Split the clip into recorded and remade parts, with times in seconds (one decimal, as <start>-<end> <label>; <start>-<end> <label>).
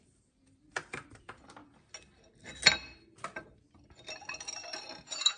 0.0-1.6 remade; 1.6-4.8 recorded; 4.8-5.4 remade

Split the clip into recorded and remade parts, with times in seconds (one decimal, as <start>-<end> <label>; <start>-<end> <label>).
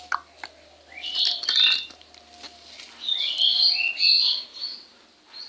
0.0-4.5 recorded; 4.5-5.5 remade